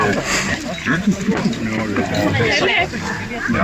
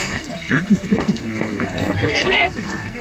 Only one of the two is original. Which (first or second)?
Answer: first